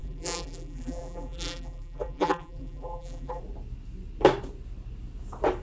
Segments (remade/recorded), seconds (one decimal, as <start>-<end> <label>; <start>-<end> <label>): 0.0-3.4 remade; 3.4-5.6 recorded